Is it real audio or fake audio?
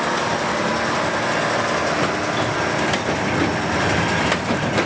real